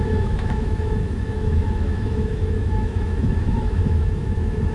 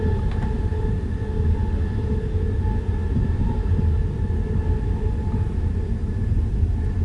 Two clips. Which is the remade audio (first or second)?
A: first